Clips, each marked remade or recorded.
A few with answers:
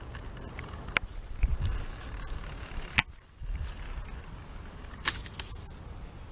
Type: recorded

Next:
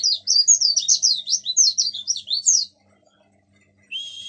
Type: recorded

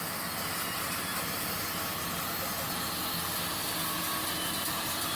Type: recorded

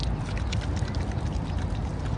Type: recorded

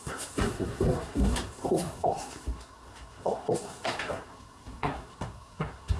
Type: remade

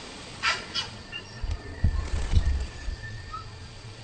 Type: remade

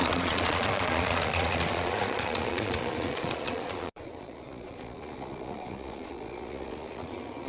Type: remade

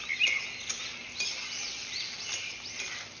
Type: recorded